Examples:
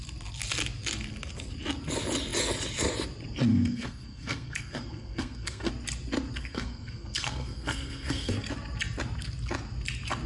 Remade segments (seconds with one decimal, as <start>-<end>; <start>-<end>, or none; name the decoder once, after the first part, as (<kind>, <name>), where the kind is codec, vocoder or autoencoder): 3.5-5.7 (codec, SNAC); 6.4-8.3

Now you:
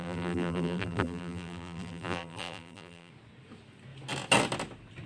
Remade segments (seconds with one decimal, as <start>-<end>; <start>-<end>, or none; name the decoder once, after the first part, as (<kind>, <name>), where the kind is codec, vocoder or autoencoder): 0.0-3.1 (vocoder, BigVGAN v2)

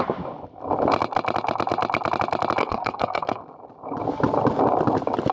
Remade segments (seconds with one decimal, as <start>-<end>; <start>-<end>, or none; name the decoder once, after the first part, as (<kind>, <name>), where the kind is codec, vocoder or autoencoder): 2.6-3.4 (codec, SNAC)

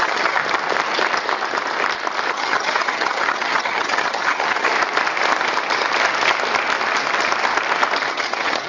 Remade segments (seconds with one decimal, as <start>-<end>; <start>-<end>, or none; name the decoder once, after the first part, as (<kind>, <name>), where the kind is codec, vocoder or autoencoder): 0.0-0.4 (vocoder, HiFi-GAN); 2.3-4.7; 8.1-8.7